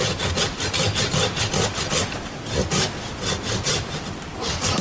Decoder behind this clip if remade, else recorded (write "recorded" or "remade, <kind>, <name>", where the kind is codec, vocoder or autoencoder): recorded